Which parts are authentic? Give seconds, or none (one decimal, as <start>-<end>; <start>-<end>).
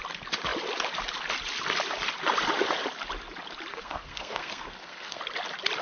0.0-3.7; 5.2-5.8